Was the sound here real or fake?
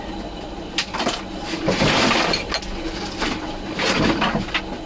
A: real